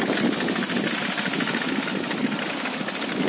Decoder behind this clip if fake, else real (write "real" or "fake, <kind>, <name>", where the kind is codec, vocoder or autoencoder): real